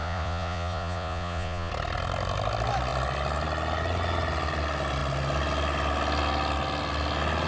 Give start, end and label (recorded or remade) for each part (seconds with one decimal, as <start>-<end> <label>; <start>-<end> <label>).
0.0-1.7 remade; 1.7-7.5 recorded